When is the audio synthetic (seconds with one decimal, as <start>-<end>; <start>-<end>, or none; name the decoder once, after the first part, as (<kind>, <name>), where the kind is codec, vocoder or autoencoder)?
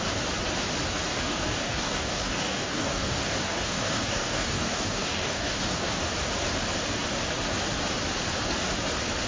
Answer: 1.1-5.9 (codec, DAC)